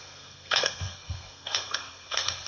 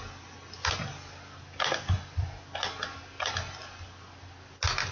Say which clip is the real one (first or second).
second